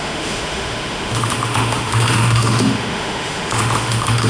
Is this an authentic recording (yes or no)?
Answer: no